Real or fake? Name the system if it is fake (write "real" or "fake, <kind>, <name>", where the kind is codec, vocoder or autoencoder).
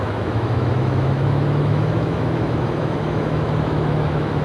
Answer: fake, autoencoder, DAC-VAE